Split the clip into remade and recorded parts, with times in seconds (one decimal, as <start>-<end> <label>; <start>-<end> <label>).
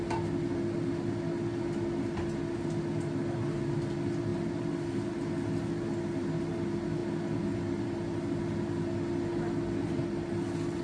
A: 0.0-10.8 recorded